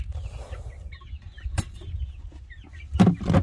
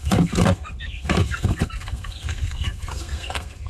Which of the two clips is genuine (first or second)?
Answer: first